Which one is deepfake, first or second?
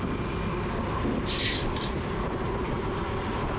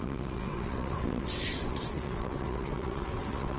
second